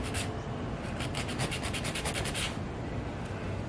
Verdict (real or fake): real